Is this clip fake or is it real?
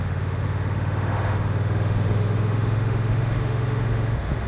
fake